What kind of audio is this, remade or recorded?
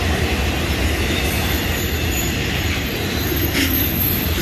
recorded